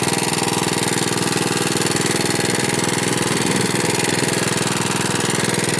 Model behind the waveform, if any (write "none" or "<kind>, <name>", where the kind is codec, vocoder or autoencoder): none